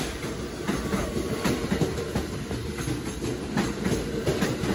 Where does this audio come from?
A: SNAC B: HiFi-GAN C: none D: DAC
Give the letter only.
C